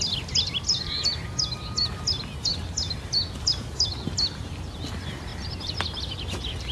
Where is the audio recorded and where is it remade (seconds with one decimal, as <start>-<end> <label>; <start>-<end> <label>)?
0.0-1.5 remade; 1.5-3.4 recorded; 3.4-5.3 remade; 5.3-6.1 recorded; 6.1-6.7 remade